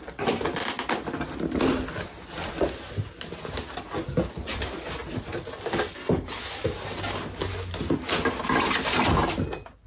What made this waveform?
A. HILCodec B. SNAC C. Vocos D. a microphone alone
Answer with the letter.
D